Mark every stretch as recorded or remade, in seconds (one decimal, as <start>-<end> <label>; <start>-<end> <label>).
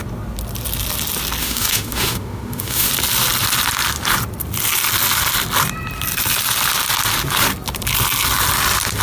0.0-1.4 recorded; 1.4-2.9 remade; 2.9-9.0 recorded